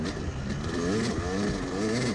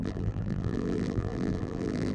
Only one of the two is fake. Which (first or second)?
second